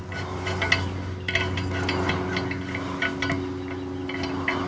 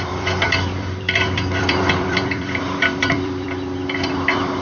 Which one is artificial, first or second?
second